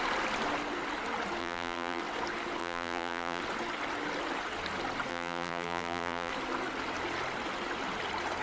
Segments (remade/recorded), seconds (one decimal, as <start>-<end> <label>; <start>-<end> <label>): 0.0-1.4 recorded; 1.4-2.0 remade; 2.0-2.6 recorded; 2.6-3.4 remade; 3.4-5.1 recorded; 5.1-6.3 remade; 6.3-8.4 recorded